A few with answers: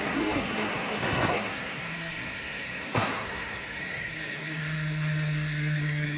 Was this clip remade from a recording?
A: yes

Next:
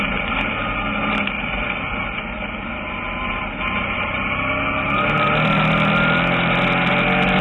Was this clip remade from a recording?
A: no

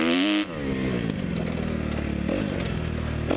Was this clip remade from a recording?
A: no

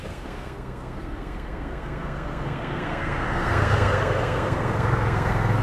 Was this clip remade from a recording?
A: yes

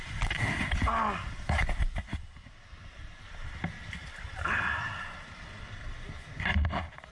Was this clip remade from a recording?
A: no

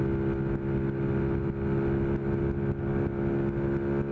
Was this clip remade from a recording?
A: no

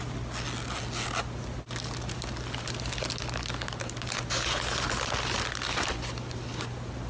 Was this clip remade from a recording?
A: no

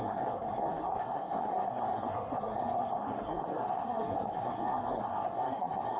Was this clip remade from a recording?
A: yes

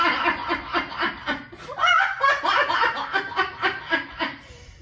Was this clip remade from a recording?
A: no